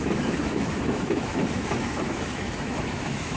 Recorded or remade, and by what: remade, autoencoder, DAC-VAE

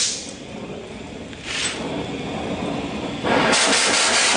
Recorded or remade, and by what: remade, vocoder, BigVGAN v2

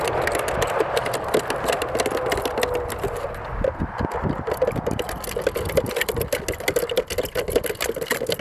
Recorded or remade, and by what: recorded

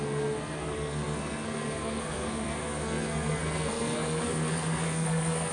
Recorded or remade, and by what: remade, codec, SNAC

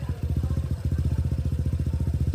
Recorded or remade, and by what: remade, vocoder, BigVGAN v2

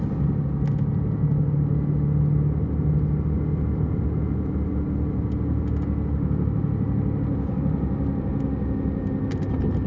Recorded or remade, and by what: recorded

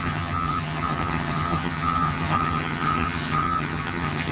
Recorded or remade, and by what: remade, vocoder, HiFi-GAN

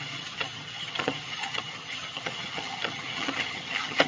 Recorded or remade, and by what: remade, vocoder, HiFi-GAN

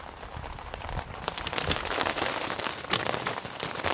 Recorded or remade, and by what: recorded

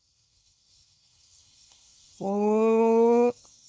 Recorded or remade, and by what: remade, codec, SNAC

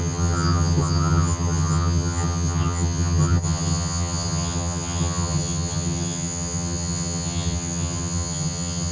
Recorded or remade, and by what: remade, vocoder, HiFi-GAN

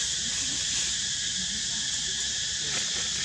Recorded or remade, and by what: recorded